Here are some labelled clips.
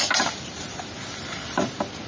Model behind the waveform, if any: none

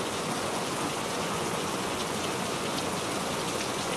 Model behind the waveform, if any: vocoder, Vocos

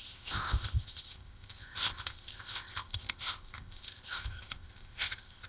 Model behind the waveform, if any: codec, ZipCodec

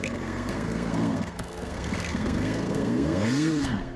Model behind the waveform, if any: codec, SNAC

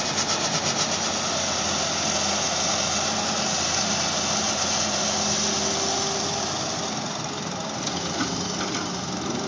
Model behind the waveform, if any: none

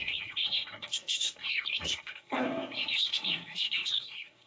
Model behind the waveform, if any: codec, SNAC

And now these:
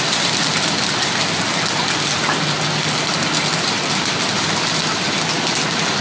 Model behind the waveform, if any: none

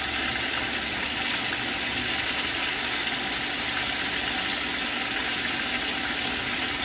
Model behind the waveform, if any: none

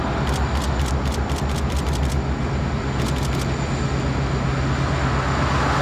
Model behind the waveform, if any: none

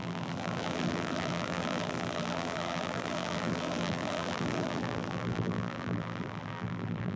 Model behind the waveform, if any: vocoder, BigVGAN v2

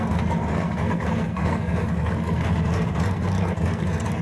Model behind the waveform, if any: codec, SNAC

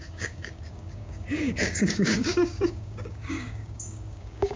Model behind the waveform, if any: codec, DAC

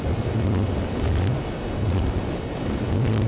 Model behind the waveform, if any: none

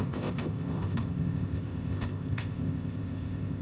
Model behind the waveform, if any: codec, ZipCodec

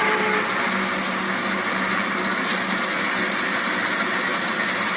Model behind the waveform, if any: none